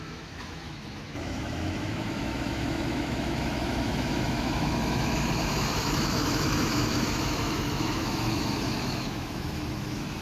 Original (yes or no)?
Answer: no